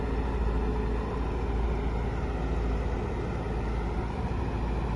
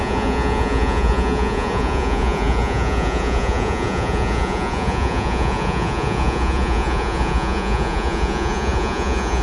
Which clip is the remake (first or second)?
second